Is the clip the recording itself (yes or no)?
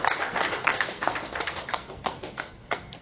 no